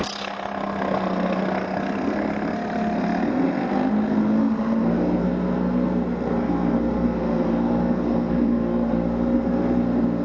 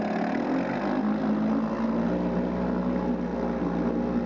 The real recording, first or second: second